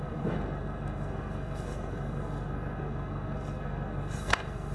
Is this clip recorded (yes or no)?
no